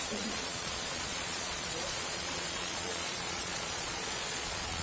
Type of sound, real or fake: fake